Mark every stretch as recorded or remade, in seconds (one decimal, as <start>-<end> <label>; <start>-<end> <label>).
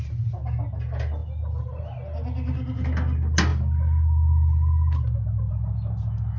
0.0-6.4 recorded